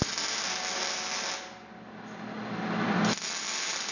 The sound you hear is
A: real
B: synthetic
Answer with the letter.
A